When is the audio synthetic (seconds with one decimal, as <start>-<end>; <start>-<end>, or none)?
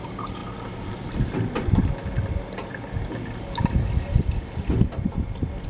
none